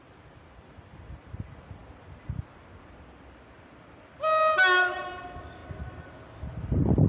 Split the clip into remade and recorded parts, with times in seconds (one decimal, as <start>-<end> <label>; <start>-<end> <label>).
0.0-7.1 recorded